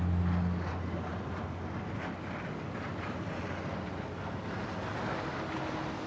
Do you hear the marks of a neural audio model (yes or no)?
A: no